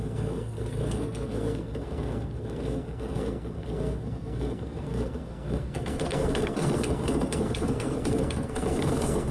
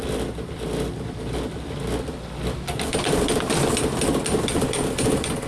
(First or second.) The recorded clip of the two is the second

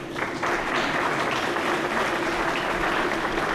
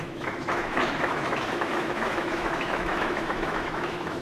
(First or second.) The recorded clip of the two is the first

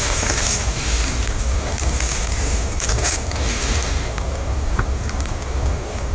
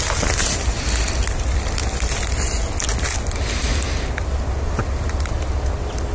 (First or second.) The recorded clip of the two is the second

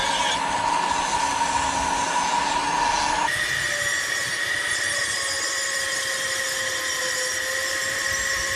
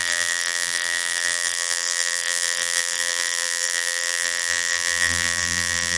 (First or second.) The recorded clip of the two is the first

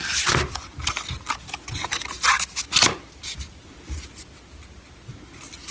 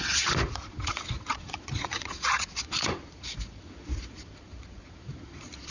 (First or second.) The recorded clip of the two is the first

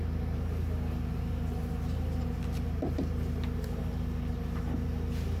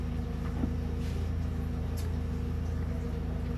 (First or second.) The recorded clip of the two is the second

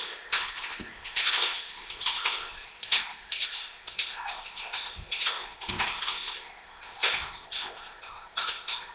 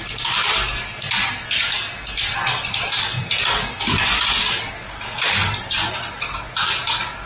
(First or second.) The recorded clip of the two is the second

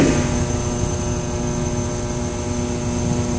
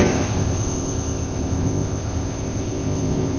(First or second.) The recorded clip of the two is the first